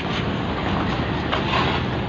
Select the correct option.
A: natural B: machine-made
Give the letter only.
A